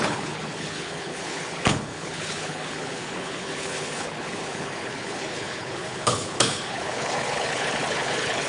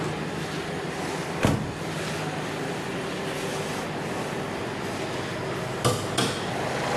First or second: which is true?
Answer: second